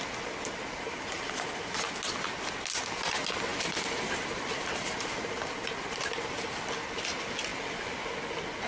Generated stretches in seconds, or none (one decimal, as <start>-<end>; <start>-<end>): 3.5-6.4

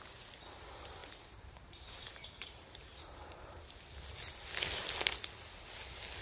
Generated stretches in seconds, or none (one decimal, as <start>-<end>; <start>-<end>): 1.0-3.6

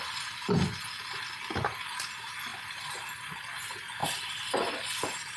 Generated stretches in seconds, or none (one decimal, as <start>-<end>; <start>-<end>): 2.5-3.3; 4.0-4.7

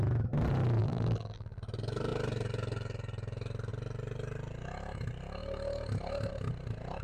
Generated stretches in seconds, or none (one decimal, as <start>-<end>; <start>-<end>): 0.8-1.6

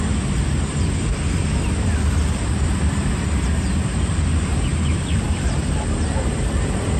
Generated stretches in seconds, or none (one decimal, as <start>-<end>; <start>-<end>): 3.9-7.0